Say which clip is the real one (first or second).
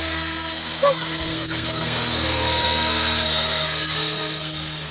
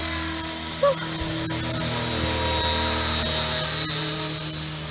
second